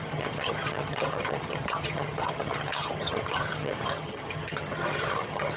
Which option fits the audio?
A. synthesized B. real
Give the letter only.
A